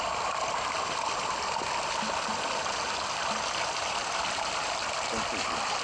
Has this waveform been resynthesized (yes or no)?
no